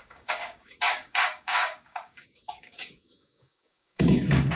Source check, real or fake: fake